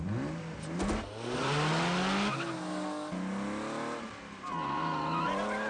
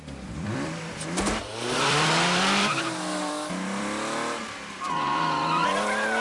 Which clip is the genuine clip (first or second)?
first